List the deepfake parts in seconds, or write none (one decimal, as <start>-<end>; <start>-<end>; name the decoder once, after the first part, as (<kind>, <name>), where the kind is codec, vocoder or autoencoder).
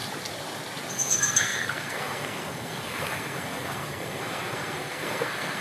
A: 0.9-5.6 (codec, SNAC)